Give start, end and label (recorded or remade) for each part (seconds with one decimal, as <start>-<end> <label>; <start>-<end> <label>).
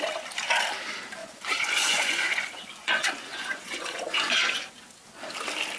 0.0-1.2 recorded; 1.2-4.7 remade; 4.7-5.8 recorded